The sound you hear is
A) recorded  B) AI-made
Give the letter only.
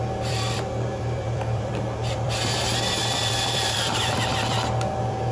B